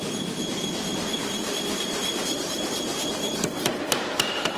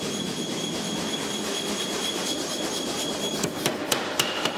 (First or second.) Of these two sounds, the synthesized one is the first